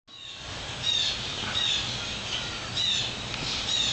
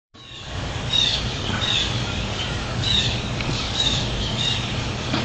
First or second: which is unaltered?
first